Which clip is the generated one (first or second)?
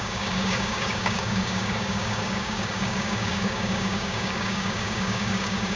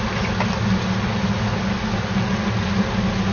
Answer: first